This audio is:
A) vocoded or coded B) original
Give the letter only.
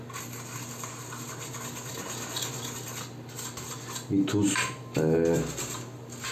B